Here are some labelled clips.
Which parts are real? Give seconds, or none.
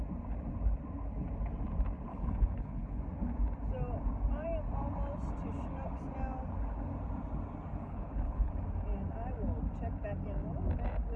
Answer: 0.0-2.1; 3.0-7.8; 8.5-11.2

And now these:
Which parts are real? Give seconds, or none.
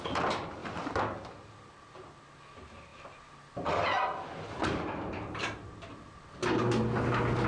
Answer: 0.0-7.5